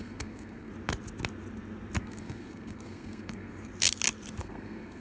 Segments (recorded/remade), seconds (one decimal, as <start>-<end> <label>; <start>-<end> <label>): 0.0-0.7 remade; 0.7-2.0 recorded; 2.0-3.7 remade; 3.7-4.4 recorded; 4.4-5.0 remade